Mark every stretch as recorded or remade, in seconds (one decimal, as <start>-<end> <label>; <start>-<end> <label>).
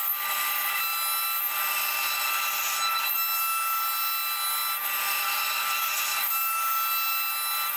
0.0-7.8 recorded